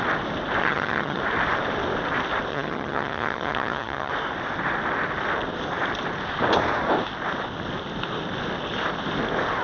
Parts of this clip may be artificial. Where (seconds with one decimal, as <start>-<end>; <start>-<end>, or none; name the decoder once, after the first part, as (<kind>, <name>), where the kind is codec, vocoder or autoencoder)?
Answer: 0.6-1.2 (vocoder, HiFi-GAN); 2.5-4.1